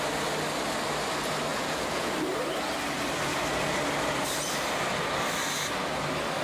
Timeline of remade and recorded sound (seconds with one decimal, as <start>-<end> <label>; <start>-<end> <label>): 0.0-1.5 recorded; 1.5-2.1 remade; 2.1-6.4 recorded